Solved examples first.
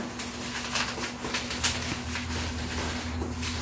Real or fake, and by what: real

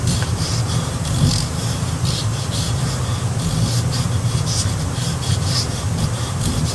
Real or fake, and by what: fake, vocoder, BigVGAN v2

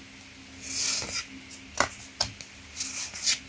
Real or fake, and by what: real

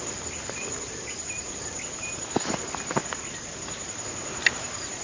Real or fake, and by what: real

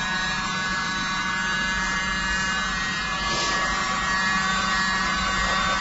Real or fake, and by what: real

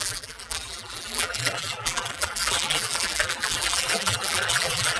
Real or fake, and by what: fake, vocoder, BigVGAN v2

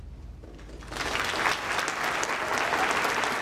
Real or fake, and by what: real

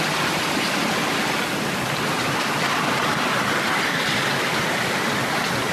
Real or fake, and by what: real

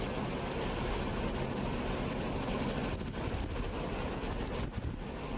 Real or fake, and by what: real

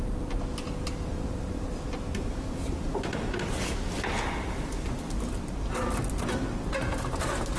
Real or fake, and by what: real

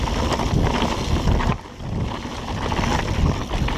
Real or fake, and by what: real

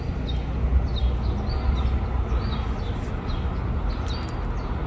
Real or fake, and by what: real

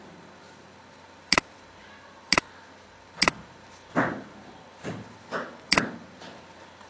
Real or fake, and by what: real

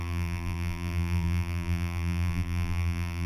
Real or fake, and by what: fake, vocoder, BigVGAN v2